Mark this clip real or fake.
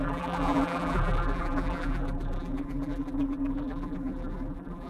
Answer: fake